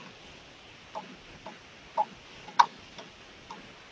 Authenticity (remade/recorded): recorded